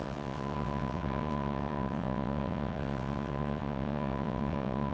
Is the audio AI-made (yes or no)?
yes